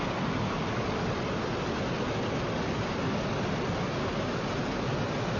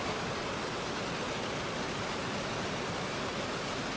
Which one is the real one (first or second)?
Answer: first